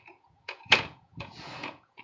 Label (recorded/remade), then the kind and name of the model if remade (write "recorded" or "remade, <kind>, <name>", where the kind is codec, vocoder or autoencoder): remade, vocoder, Vocos